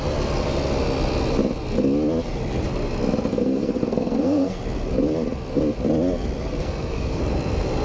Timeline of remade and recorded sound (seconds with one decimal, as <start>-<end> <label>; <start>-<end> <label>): 0.0-3.3 recorded; 3.3-4.6 remade; 4.6-6.6 recorded; 6.6-7.2 remade; 7.2-7.8 recorded